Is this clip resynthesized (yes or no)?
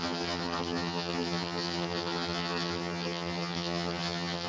yes